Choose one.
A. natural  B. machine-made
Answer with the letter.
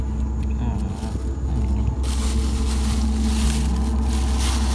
A